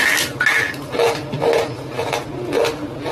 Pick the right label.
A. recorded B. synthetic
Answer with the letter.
A